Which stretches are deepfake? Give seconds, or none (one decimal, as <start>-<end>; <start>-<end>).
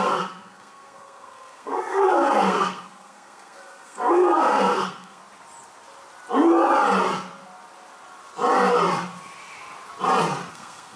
0.0-5.2; 10.5-11.0